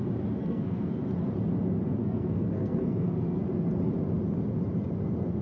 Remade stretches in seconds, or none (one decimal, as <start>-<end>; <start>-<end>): 0.4-1.0; 2.0-3.4